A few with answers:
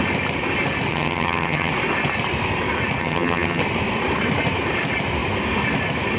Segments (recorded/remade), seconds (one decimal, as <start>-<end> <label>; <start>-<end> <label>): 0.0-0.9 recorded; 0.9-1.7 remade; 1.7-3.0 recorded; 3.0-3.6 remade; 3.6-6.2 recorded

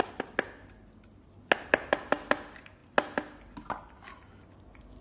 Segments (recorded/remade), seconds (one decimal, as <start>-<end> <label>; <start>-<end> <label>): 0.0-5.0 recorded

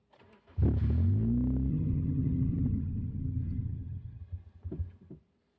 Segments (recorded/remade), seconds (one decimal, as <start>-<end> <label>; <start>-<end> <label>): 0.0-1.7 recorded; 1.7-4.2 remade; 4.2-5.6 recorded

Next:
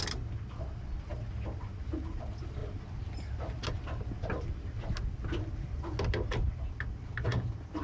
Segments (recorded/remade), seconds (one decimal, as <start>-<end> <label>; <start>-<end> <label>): 0.0-7.8 recorded

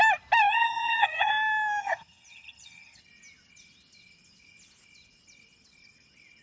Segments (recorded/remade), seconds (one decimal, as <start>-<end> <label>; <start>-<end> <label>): 0.0-0.5 recorded; 0.5-1.3 remade; 1.3-1.8 recorded; 1.8-3.0 remade; 3.0-6.4 recorded

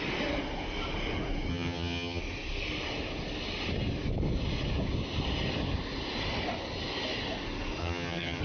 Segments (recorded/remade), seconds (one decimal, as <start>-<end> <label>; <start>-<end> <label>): 0.0-1.5 recorded; 1.5-2.2 remade; 2.2-7.8 recorded; 7.8-8.4 remade